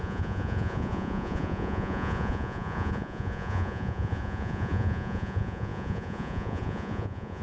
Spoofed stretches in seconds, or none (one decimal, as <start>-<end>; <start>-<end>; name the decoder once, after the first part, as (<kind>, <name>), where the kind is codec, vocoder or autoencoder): 0.0-7.4 (vocoder, Vocos)